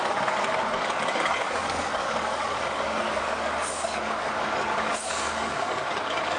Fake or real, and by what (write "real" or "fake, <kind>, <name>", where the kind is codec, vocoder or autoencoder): fake, codec, DAC